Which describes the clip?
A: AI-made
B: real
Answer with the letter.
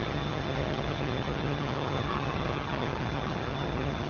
A